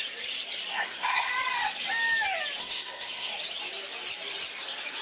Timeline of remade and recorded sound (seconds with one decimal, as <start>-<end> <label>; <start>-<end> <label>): 0.0-0.7 recorded; 0.7-1.3 remade; 1.3-2.6 recorded; 2.6-3.3 remade; 3.3-5.0 recorded